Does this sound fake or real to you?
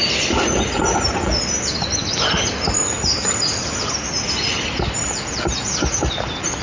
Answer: real